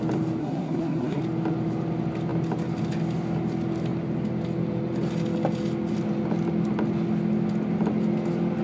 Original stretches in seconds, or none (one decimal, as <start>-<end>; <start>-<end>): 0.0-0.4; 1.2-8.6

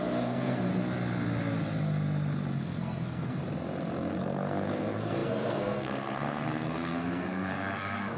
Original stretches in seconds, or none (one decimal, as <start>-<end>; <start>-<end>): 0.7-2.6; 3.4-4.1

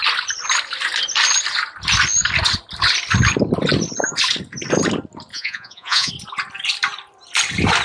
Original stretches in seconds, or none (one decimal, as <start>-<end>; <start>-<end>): 0.0-5.3; 6.1-7.8